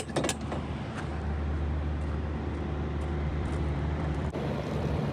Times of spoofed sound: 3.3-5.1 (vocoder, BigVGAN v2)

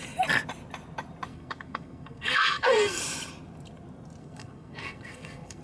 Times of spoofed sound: 1.3-3.0 (codec, SNAC); 4.2-5.6

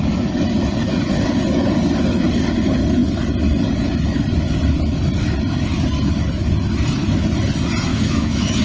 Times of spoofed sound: 7.9-8.6 (autoencoder, DAC-VAE)

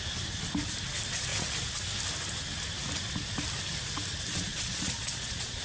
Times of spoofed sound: 4.5-5.6 (vocoder, Vocos)